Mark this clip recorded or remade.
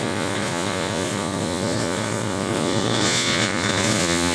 remade